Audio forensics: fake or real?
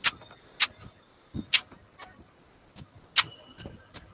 real